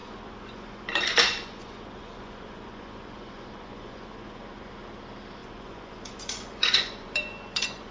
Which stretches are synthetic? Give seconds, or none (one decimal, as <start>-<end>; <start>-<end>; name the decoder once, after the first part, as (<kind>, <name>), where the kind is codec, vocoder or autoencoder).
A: 0.0-4.7 (vocoder, Vocos); 5.4-7.9